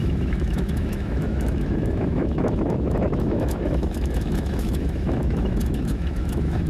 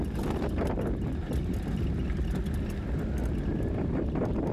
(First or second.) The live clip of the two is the second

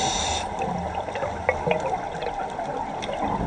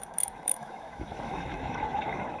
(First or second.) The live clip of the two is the first